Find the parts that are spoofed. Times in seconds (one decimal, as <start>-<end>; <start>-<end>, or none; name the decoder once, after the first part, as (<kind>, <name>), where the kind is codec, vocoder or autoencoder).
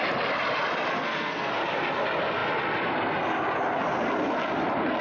0.9-1.5 (codec, SNAC)